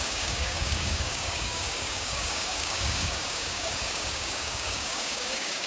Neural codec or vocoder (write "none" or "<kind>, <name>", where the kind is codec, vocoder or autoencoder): codec, DAC